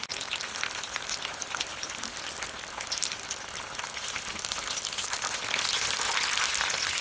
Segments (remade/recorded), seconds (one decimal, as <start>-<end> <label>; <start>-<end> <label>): 0.0-7.0 recorded